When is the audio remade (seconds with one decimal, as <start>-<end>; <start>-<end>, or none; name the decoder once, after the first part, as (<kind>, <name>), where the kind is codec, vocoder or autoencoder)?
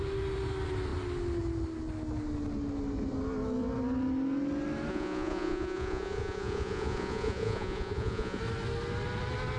4.9-8.4 (vocoder, Vocos)